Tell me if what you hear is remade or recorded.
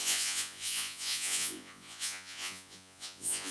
remade